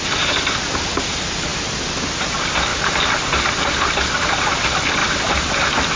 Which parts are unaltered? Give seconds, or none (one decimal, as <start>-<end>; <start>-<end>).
0.0-6.0